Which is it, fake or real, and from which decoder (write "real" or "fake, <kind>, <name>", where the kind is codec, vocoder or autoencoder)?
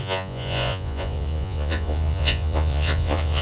fake, vocoder, Vocos